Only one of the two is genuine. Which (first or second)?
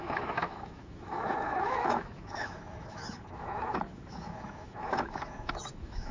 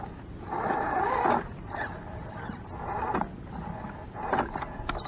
second